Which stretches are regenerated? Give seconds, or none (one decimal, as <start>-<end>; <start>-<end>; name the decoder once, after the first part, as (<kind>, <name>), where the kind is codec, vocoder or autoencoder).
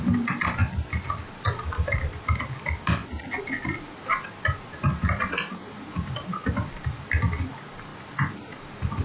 0.0-0.6 (vocoder, BigVGAN v2); 1.5-3.0; 4.8-7.9; 8.4-9.0